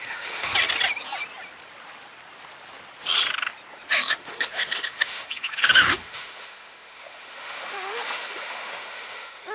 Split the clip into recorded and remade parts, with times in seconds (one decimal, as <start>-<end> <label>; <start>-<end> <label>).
0.0-0.5 remade; 0.5-3.9 recorded; 3.9-9.5 remade